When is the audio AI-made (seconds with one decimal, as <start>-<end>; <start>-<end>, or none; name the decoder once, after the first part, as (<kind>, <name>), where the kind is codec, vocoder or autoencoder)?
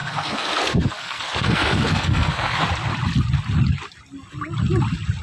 0.0-2.6 (codec, SNAC)